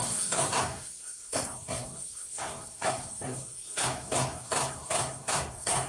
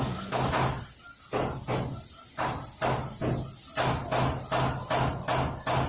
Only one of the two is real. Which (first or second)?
second